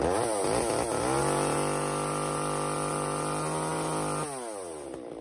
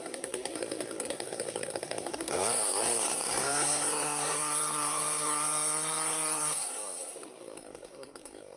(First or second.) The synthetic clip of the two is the second